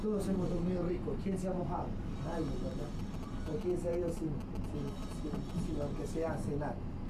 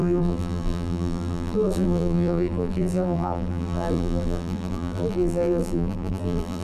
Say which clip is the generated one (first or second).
second